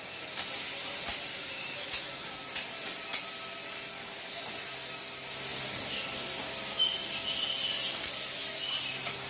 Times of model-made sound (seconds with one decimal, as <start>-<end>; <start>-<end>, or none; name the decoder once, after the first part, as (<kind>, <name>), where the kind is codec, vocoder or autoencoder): 1.3-2.3 (autoencoder, DAC-VAE)